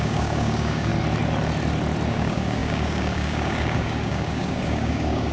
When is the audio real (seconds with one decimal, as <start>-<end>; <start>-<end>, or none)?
0.9-2.1